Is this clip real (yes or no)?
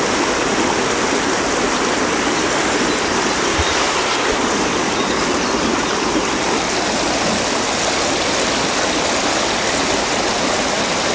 yes